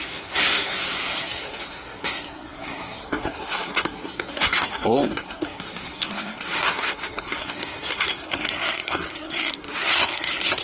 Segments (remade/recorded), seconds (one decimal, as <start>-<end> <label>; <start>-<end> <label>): 0.0-10.6 remade